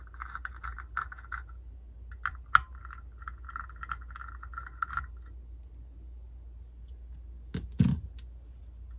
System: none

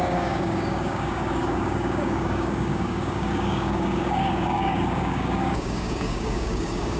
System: codec, DAC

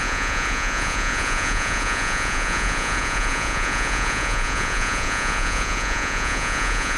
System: vocoder, Vocos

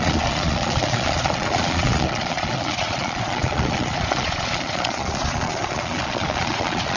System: vocoder, Vocos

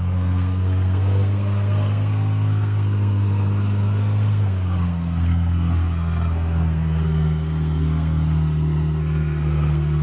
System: codec, SNAC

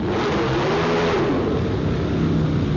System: none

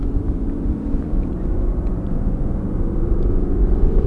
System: vocoder, Vocos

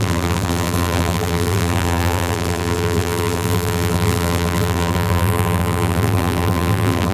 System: vocoder, BigVGAN v2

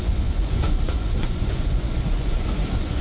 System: vocoder, Vocos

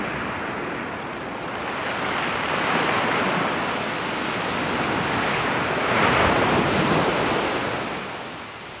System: none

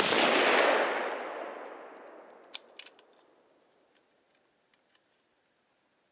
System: none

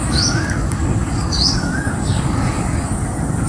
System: codec, DAC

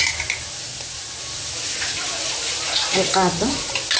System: none